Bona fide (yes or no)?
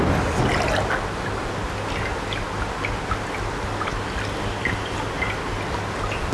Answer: yes